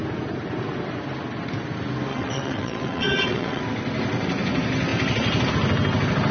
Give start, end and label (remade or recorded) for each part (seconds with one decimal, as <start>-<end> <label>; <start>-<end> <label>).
0.0-2.1 recorded; 2.1-3.6 remade; 3.6-6.3 recorded